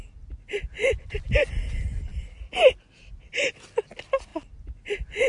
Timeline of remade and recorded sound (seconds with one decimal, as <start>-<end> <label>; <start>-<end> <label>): 0.0-5.3 recorded